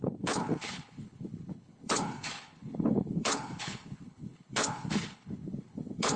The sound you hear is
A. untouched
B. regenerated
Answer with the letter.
B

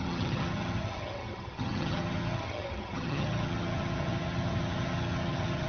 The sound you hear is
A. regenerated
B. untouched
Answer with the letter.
A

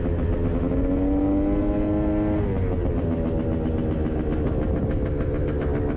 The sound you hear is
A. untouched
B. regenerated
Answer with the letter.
A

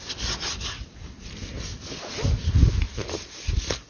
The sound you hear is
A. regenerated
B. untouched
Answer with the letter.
B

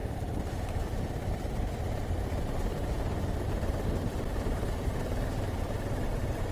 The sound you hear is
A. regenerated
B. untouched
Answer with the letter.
A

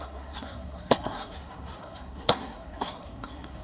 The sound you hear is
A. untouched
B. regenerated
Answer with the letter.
B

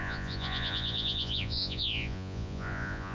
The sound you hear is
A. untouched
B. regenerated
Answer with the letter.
B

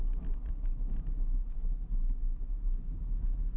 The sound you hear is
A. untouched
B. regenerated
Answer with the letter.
A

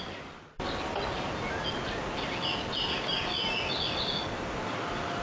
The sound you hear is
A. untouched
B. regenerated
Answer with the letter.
A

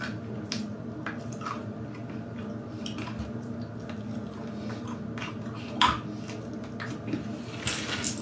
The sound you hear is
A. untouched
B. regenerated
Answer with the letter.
A